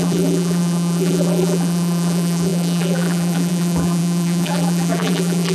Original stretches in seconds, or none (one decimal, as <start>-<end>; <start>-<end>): none